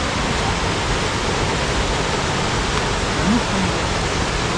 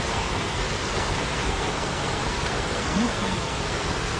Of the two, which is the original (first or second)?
first